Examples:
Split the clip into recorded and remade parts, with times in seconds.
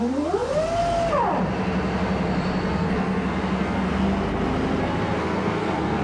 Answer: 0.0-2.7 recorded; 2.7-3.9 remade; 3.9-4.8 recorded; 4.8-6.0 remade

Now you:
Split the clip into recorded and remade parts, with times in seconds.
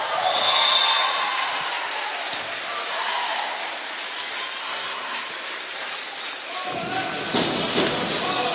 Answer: 0.0-4.6 recorded; 4.6-5.2 remade; 5.2-8.5 recorded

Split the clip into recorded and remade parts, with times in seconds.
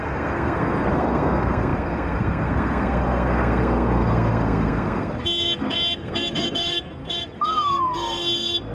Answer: 0.0-8.7 remade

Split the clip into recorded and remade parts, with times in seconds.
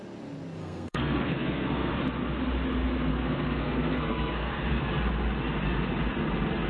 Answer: 0.0-0.6 recorded; 0.6-1.9 remade; 1.9-3.1 recorded; 3.1-4.8 remade; 4.8-6.7 recorded